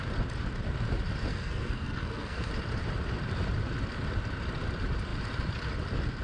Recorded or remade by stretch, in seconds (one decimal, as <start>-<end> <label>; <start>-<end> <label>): 0.0-1.3 recorded; 1.3-2.5 remade; 2.5-6.2 recorded